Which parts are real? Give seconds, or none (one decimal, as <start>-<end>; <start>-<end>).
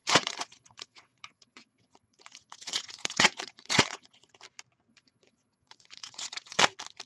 4.3-4.9; 6.6-7.1